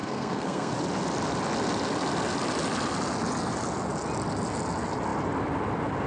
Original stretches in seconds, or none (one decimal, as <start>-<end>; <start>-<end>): 0.7-6.1